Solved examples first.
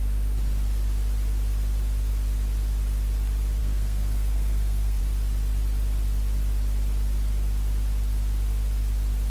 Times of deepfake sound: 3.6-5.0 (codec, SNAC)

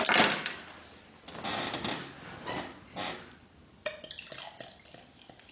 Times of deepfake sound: none

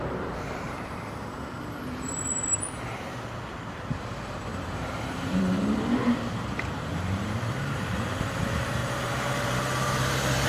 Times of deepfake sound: 0.0-2.5 (vocoder, BigVGAN v2); 3.9-10.5